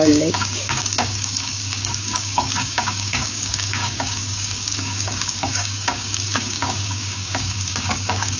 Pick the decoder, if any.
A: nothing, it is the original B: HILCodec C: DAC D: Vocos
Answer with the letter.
C